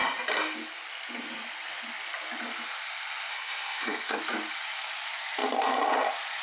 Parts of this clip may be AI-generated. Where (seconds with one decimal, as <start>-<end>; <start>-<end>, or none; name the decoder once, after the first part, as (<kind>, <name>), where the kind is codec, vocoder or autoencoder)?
3.3-4.2 (codec, SNAC)